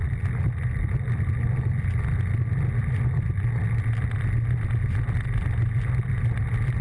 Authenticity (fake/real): real